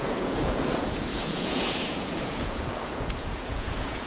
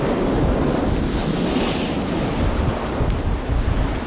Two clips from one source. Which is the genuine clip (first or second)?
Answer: second